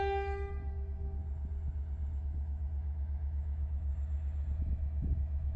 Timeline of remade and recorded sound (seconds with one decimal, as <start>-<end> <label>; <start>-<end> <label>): 0.0-1.2 remade; 1.2-2.2 recorded; 2.2-3.9 remade; 3.9-4.6 recorded; 4.6-5.6 remade